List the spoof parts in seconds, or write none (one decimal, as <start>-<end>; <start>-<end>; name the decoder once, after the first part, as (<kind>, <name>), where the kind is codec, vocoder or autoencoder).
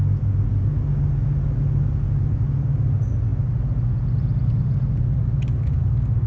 none